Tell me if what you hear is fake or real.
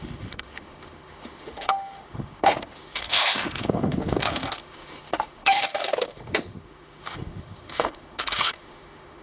fake